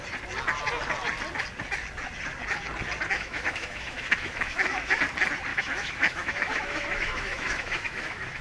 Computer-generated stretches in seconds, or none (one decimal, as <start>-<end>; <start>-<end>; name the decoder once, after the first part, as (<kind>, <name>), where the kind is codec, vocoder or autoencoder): 3.1-5.0 (autoencoder, DAC-VAE); 5.5-8.4